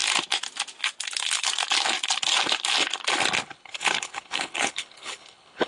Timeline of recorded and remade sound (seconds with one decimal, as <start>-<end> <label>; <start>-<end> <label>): 0.0-3.4 recorded; 3.4-5.7 remade